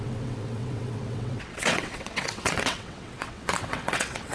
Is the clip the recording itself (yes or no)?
no